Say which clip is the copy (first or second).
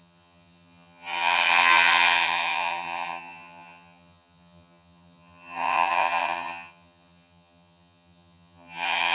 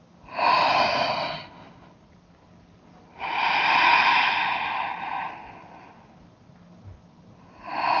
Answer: first